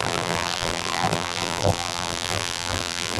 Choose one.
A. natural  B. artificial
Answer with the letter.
B